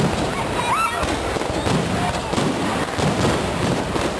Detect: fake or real real